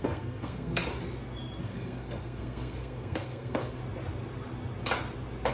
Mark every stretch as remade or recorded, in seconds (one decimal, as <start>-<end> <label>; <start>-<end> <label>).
0.0-0.8 remade; 0.8-1.6 recorded; 1.6-3.8 remade; 3.8-5.5 recorded